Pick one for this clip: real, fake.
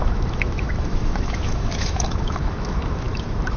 fake